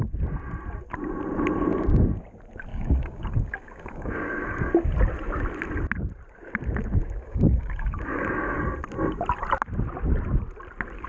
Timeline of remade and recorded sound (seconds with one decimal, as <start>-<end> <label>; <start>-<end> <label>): 0.0-2.7 recorded; 2.7-4.7 remade; 4.7-7.0 recorded; 7.0-8.6 remade; 8.6-11.1 recorded